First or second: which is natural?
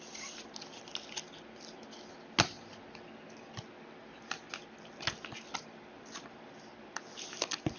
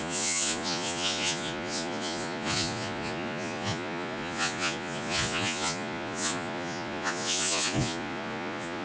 first